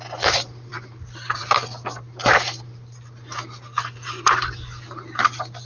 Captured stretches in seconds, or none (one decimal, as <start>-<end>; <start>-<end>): 0.0-5.6